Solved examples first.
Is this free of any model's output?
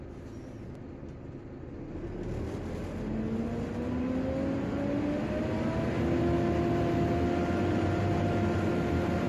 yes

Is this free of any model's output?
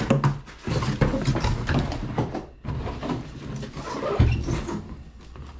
yes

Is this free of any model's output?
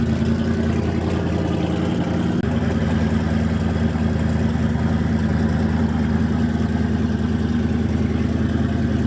yes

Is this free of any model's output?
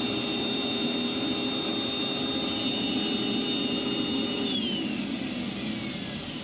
yes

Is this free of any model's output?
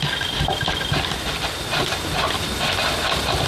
yes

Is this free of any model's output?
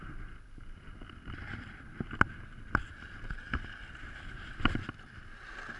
yes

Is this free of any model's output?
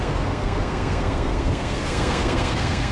no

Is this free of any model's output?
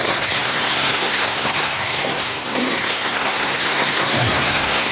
no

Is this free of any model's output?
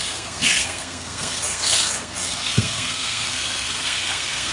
no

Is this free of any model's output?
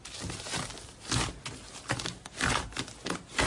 yes